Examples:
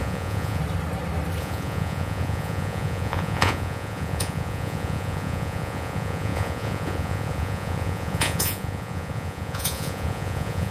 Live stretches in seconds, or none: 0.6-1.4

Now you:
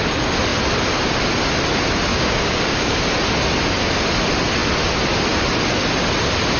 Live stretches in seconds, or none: 0.0-2.1; 3.0-6.6

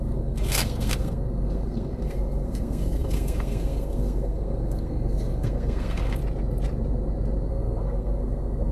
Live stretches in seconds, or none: 6.2-7.5

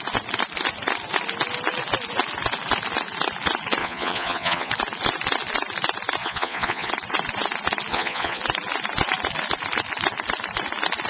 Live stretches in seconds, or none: 0.0-3.8; 4.7-6.2; 6.9-7.9; 8.4-11.1

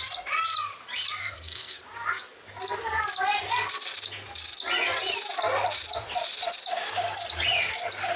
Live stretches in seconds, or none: 0.0-1.2; 1.8-8.2

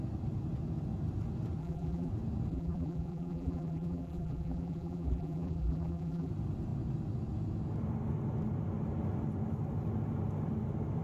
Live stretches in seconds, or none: 0.0-1.6; 2.1-2.5; 6.3-11.0

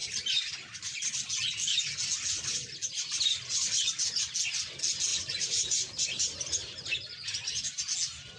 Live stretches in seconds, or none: 0.0-5.1; 6.0-8.4